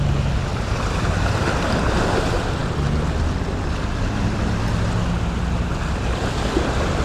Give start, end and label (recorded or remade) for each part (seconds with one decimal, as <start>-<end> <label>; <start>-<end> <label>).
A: 0.0-0.5 recorded; 0.5-1.4 remade; 1.4-7.0 recorded